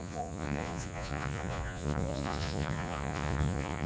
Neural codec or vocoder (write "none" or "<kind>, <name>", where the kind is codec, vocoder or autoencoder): vocoder, Vocos